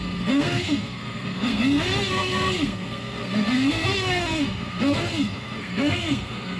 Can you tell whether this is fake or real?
fake